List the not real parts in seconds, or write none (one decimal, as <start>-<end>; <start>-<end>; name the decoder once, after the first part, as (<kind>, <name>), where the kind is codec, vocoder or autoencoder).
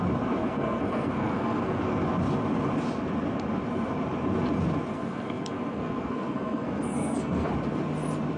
0.4-1.8 (codec, SNAC); 4.9-7.5